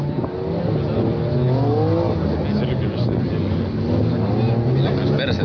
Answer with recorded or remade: recorded